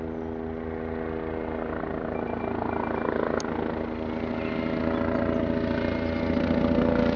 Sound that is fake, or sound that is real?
real